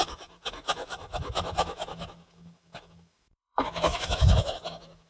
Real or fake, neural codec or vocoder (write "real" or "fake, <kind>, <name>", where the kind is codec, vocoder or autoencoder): fake, autoencoder, DAC-VAE